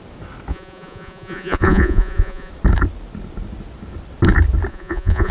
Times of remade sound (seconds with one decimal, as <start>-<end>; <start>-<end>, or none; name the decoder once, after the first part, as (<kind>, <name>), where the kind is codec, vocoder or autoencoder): 0.5-2.5 (vocoder, Vocos); 4.7-5.3